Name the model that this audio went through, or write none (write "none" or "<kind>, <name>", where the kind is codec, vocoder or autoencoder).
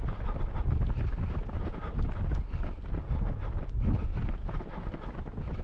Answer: none